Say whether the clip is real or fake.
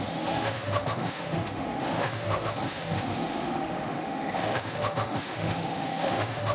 fake